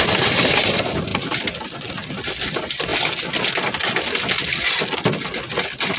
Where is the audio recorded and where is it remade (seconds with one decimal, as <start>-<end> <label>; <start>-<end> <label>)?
0.0-6.0 recorded